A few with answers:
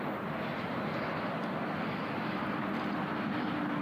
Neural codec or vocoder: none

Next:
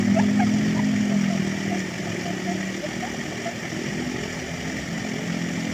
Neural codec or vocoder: none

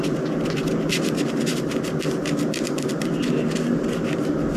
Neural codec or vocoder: none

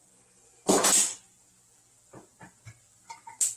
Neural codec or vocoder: vocoder, BigVGAN v2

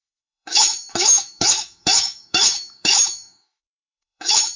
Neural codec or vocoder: autoencoder, DAC-VAE